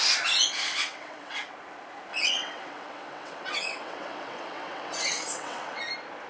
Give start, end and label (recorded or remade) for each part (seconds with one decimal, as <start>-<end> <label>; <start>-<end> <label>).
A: 0.0-0.8 recorded; 0.8-1.5 remade; 1.5-2.1 recorded; 2.1-5.8 remade; 5.8-6.3 recorded